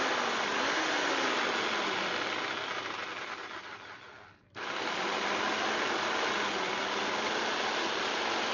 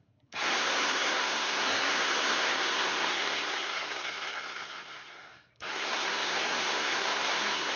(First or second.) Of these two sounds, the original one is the first